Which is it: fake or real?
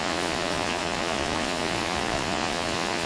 fake